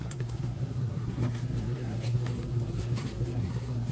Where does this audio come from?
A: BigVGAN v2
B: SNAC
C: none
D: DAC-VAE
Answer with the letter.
B